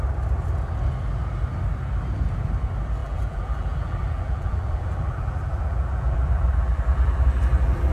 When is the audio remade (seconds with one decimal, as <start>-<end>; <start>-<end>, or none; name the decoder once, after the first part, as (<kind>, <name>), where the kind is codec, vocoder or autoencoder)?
3.0-7.9 (vocoder, BigVGAN v2)